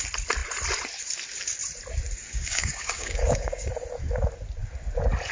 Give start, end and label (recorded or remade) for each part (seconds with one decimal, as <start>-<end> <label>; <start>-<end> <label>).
0.0-2.3 recorded; 2.3-3.7 remade; 3.7-5.3 recorded